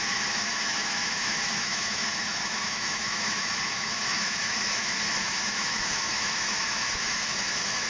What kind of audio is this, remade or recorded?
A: remade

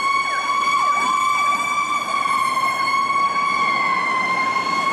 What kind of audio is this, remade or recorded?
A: recorded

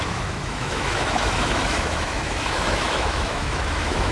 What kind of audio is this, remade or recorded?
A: remade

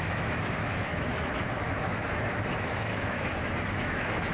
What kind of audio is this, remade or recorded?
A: remade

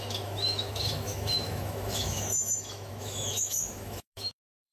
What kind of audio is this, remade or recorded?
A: remade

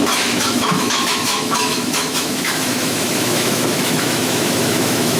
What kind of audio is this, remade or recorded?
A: remade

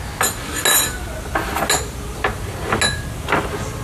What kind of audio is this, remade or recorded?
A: recorded